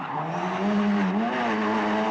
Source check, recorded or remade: recorded